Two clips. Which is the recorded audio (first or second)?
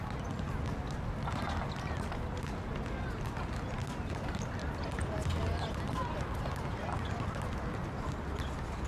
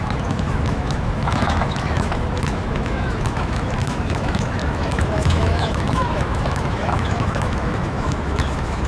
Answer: first